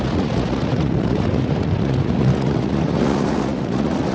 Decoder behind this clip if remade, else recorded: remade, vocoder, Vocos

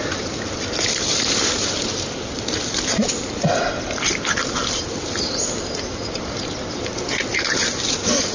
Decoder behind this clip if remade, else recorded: recorded